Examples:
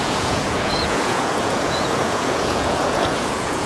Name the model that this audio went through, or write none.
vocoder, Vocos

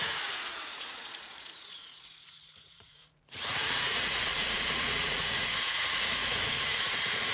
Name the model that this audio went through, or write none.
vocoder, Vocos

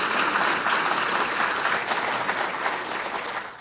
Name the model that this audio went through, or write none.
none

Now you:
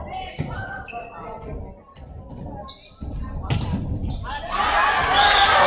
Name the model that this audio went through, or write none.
none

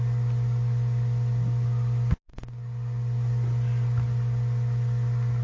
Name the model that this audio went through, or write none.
none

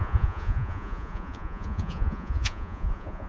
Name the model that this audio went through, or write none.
vocoder, Vocos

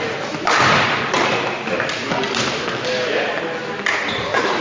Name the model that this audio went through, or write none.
none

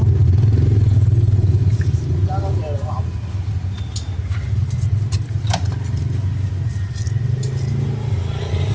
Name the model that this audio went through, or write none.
none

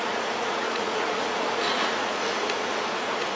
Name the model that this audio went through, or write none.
vocoder, Vocos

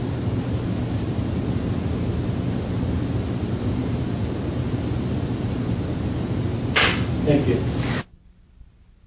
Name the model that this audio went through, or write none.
none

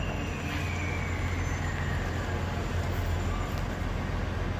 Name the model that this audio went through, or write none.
none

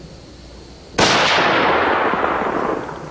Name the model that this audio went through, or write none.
none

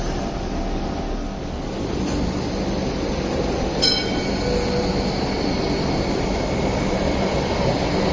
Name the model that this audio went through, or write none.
none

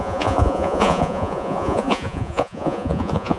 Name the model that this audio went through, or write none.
vocoder, Vocos